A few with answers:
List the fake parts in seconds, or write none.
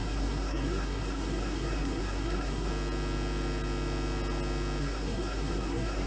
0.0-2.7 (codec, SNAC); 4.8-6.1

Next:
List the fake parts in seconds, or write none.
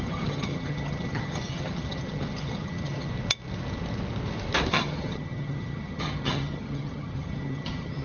0.0-3.1 (vocoder, HiFi-GAN); 4.7-8.0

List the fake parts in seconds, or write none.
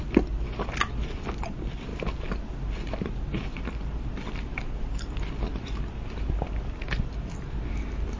none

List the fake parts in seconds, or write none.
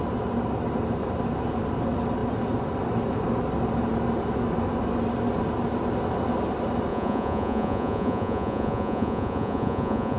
6.9-10.2 (vocoder, Vocos)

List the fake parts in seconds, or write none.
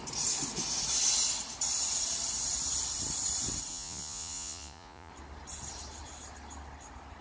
3.7-5.1 (vocoder, Vocos)